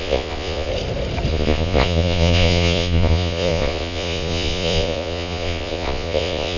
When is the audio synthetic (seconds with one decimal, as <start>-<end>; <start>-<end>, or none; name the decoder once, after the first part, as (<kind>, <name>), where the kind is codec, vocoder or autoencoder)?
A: 0.0-0.7 (vocoder, Vocos); 1.3-6.6